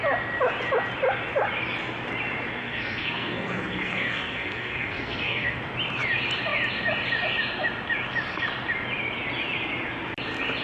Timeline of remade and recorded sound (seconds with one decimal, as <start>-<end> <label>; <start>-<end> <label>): 0.0-2.6 recorded; 2.6-5.6 remade; 5.6-10.6 recorded